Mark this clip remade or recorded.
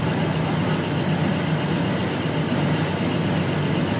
recorded